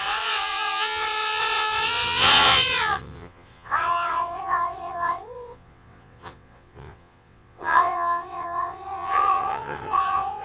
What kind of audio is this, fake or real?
fake